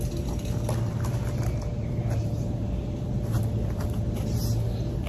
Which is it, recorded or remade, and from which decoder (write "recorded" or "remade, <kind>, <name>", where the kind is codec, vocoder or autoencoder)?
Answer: recorded